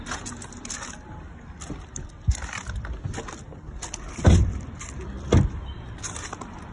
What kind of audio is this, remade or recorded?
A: remade